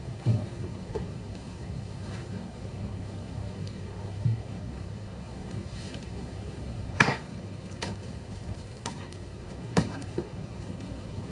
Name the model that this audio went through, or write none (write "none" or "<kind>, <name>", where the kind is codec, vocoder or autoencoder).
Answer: codec, SNAC